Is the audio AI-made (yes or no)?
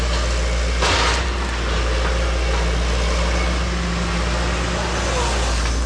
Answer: no